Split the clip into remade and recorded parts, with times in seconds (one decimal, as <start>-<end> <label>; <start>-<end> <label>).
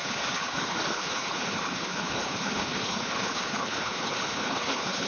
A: 0.0-5.1 remade